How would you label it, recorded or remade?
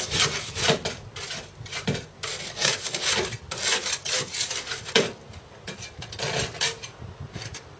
recorded